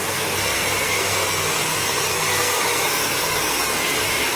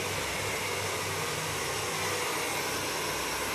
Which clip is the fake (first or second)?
first